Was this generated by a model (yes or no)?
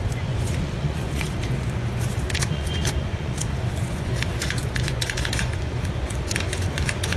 yes